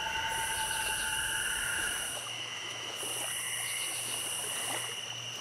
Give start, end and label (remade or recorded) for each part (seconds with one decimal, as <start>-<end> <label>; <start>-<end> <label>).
0.0-1.7 recorded; 1.7-3.0 remade; 3.0-5.4 recorded